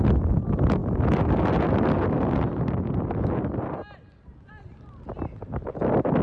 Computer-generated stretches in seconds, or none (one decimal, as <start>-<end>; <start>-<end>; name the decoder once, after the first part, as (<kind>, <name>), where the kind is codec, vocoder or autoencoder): none